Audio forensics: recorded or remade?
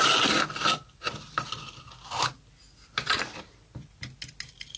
recorded